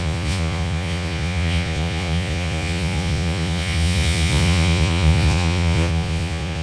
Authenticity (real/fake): fake